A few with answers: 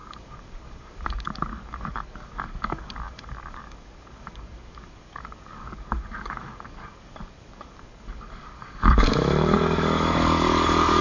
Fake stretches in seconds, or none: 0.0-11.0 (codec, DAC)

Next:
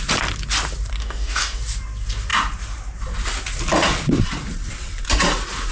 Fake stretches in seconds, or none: 1.0-1.6 (codec, DAC)